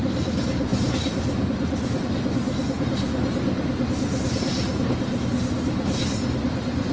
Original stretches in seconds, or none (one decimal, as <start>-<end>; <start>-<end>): 0.0-6.9